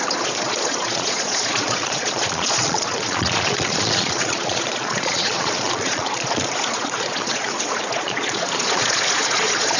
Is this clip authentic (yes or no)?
no